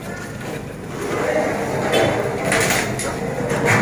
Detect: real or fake real